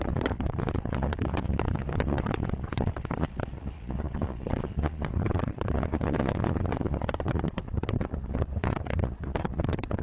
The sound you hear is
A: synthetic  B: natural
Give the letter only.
A